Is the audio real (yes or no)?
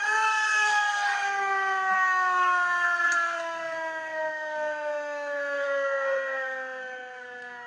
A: no